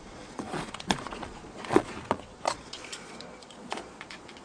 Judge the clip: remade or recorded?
remade